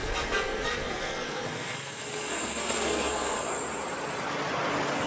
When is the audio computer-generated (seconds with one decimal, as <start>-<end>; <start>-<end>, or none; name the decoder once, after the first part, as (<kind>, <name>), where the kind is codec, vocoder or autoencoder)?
0.0-3.5 (codec, SNAC)